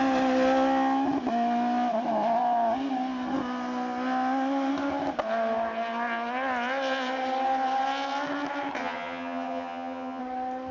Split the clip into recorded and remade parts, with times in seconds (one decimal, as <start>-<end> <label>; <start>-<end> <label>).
0.0-8.8 recorded; 8.8-10.2 remade; 10.2-10.7 recorded